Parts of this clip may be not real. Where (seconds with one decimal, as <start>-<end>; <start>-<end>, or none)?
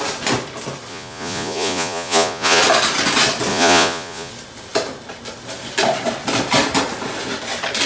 0.9-2.6; 3.5-4.3